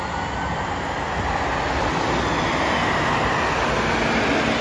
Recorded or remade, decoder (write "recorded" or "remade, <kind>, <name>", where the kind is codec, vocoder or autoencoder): recorded